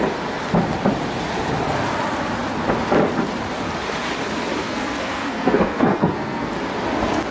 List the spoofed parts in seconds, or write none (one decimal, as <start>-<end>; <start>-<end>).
4.6-6.5